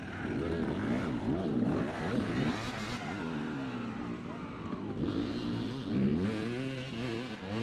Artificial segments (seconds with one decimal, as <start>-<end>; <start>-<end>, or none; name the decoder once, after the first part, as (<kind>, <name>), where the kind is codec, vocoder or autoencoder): 3.9-4.7 (vocoder, BigVGAN v2)